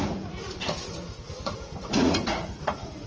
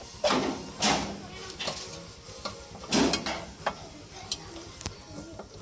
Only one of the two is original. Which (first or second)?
second